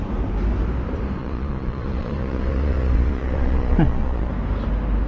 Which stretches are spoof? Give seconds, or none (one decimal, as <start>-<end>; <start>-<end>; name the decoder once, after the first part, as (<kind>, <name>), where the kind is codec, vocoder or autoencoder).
1.2-4.3 (vocoder, Vocos)